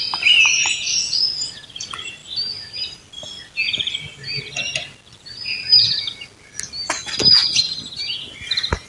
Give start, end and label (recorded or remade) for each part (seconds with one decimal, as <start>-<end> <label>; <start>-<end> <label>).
0.0-8.9 recorded